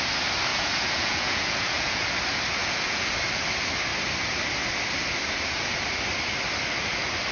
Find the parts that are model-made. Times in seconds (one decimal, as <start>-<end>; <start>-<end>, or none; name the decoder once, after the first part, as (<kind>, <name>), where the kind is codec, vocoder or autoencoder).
0.5-2.1 (vocoder, Vocos); 2.6-3.1